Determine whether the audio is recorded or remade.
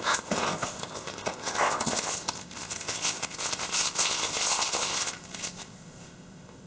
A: remade